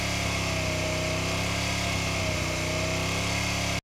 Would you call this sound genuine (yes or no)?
yes